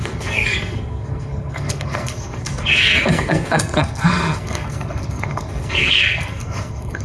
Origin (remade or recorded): remade